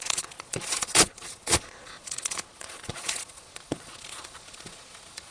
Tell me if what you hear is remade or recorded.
remade